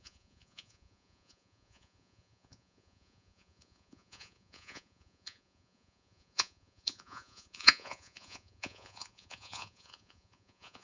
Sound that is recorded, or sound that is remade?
remade